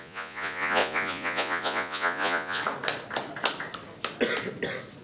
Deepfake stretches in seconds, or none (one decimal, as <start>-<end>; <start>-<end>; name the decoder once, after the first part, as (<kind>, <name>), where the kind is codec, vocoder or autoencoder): 0.0-2.6 (vocoder, Vocos)

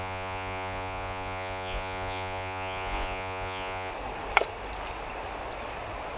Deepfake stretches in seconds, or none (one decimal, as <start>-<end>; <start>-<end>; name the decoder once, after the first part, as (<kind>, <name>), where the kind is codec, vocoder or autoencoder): 0.0-3.9 (vocoder, Vocos)

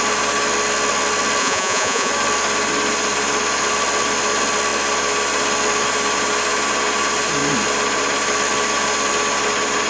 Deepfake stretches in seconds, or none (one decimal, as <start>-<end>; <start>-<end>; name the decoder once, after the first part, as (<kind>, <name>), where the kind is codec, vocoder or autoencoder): 1.4-2.1 (vocoder, Vocos)

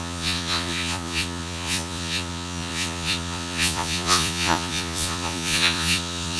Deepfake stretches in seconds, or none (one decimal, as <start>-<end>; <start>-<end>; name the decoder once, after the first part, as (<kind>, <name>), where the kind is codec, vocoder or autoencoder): 0.0-6.4 (vocoder, Vocos)

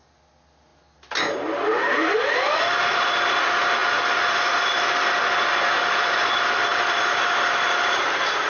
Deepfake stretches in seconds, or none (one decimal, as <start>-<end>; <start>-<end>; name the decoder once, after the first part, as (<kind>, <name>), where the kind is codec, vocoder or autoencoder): none